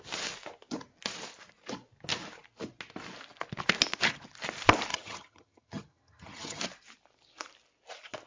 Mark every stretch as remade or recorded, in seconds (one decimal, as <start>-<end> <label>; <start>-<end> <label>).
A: 0.0-4.9 recorded; 4.9-6.6 remade; 6.6-8.3 recorded